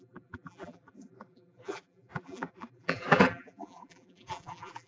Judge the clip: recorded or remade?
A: remade